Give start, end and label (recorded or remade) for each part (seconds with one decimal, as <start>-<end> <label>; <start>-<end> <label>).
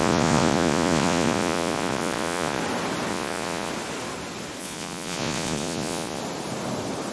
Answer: 0.0-2.6 remade; 2.6-3.1 recorded; 3.1-3.7 remade; 3.7-4.6 recorded; 4.6-6.2 remade; 6.2-7.1 recorded